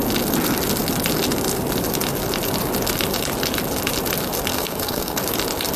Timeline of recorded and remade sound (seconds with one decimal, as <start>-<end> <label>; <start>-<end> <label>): 0.0-4.5 recorded; 4.5-5.2 remade; 5.2-5.8 recorded